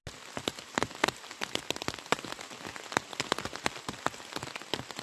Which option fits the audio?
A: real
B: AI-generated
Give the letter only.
A